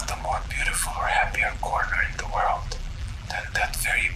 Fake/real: fake